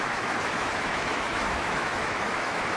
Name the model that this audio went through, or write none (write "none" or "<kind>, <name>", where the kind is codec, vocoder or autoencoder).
autoencoder, DAC-VAE